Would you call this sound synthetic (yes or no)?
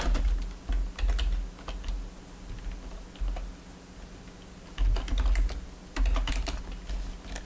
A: no